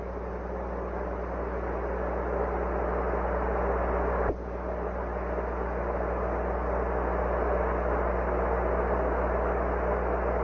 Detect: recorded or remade recorded